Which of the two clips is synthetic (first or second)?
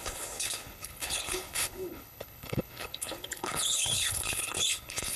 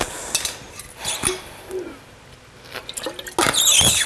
first